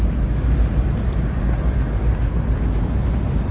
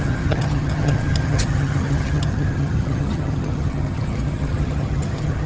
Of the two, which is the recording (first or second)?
first